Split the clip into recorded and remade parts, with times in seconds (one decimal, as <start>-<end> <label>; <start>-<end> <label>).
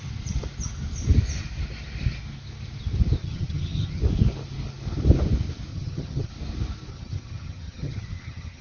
0.0-3.2 recorded; 3.2-4.0 remade; 4.0-5.7 recorded; 5.7-6.3 remade; 6.3-6.9 recorded; 6.9-8.6 remade